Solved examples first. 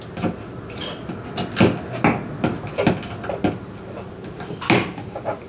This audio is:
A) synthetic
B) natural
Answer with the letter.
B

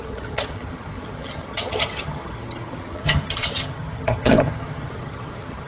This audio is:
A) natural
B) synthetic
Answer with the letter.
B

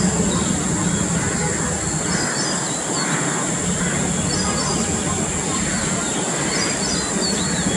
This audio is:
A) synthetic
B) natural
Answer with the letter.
B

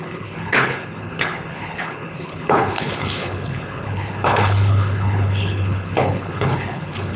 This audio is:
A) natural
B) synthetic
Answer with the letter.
B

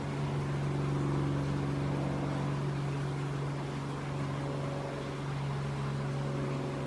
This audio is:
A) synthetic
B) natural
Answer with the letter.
B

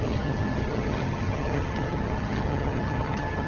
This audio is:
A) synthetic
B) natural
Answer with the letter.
A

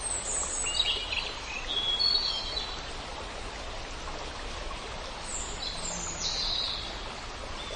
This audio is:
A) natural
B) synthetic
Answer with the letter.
A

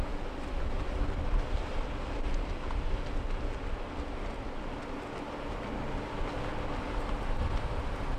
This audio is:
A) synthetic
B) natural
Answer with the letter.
B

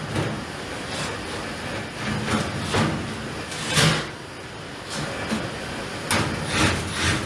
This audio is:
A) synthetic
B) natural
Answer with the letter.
B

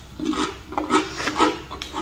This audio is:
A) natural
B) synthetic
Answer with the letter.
A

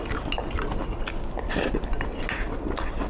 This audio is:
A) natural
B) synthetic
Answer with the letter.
A